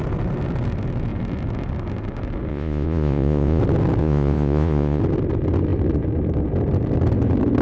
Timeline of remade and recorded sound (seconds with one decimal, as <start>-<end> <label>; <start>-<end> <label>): 0.0-2.5 recorded; 2.5-3.6 remade; 3.6-4.0 recorded; 4.0-5.0 remade; 5.0-7.6 recorded